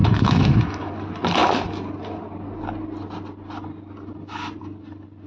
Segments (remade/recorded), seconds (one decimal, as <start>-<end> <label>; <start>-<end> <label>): 0.0-0.9 remade; 0.9-5.3 recorded